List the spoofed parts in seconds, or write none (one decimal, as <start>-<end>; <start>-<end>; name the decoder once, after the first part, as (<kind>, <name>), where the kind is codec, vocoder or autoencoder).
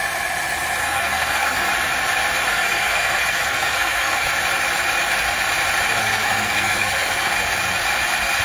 0.8-1.7 (codec, SNAC); 2.5-4.3; 6.0-7.3